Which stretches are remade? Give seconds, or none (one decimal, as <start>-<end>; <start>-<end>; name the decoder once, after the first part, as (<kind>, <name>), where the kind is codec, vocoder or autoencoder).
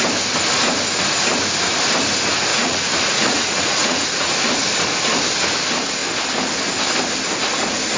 2.5-4.3 (vocoder, Vocos)